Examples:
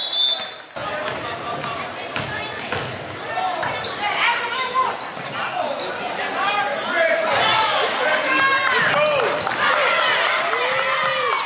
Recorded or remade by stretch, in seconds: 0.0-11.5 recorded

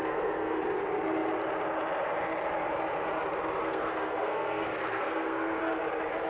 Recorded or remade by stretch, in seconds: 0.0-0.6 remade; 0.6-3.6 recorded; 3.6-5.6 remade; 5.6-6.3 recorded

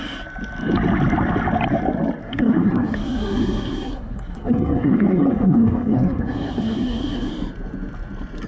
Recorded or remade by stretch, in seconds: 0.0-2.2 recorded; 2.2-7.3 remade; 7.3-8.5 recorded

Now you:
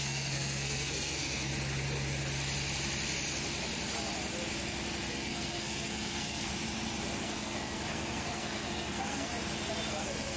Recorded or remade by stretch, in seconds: 0.0-1.5 remade; 1.5-5.1 recorded; 5.1-6.5 remade; 6.5-7.2 recorded; 7.2-9.3 remade; 9.3-9.9 recorded; 9.9-10.4 remade